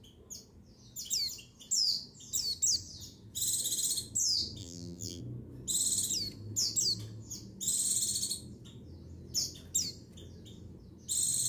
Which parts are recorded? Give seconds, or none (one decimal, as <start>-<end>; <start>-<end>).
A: 0.0-4.6; 5.2-11.5